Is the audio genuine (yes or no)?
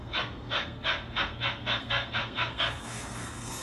no